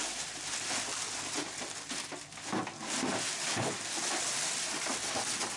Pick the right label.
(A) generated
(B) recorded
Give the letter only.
B